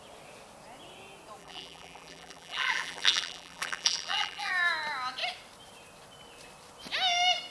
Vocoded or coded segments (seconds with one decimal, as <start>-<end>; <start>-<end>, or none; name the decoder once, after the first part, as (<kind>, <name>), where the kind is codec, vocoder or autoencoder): 1.4-4.5 (vocoder, BigVGAN v2)